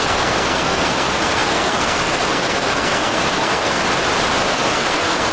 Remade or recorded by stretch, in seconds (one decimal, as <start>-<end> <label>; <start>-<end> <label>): 0.0-3.8 remade; 3.8-4.5 recorded; 4.5-5.3 remade